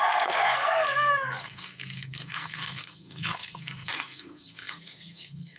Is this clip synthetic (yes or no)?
yes